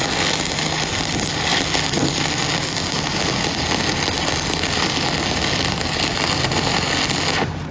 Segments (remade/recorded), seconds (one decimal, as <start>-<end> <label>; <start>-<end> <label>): 0.0-7.7 recorded